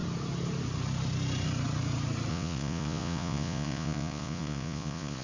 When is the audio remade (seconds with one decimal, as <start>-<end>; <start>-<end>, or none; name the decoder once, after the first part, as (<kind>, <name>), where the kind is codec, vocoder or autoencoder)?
2.3-5.2 (vocoder, Vocos)